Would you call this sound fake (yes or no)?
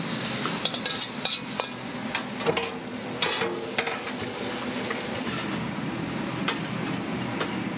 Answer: no